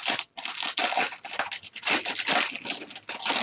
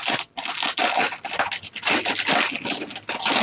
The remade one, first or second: first